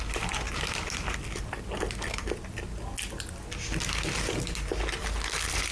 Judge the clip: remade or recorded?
recorded